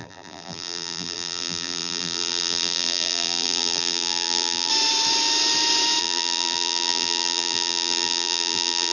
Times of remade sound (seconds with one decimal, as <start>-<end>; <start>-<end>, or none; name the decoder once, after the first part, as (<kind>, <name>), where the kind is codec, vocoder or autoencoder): 0.0-4.7 (vocoder, BigVGAN v2); 6.0-8.9

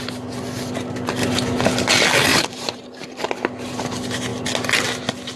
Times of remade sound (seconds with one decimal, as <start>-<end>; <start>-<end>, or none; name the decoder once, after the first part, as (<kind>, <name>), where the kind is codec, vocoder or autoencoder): 2.3-3.2 (vocoder, BigVGAN v2)

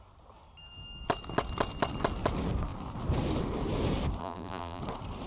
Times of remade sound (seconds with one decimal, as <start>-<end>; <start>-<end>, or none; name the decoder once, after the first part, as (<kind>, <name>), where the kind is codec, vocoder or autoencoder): 4.2-4.8 (vocoder, BigVGAN v2)

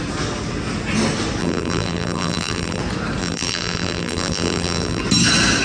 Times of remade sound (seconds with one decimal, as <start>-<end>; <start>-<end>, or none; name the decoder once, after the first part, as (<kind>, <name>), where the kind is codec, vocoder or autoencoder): 1.4-2.8 (vocoder, BigVGAN v2); 3.2-5.0